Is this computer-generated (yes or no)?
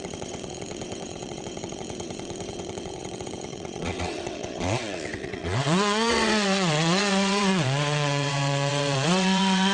yes